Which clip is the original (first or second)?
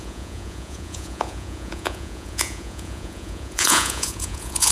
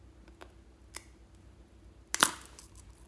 second